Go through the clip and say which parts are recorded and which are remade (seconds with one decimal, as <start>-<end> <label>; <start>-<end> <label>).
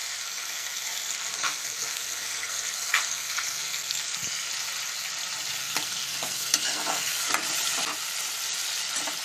0.0-4.5 remade; 4.5-5.6 recorded; 5.6-7.3 remade; 7.3-9.2 recorded